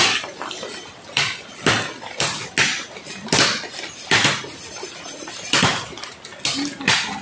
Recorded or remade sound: recorded